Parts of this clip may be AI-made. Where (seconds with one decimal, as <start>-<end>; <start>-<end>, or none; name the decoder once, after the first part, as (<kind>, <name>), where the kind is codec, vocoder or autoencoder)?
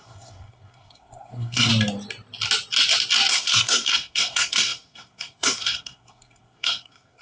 0.0-1.7 (codec, SNAC); 3.3-7.2